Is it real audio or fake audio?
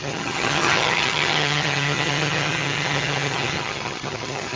fake